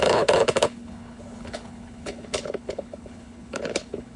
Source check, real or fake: fake